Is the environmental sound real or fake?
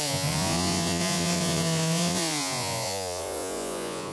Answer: fake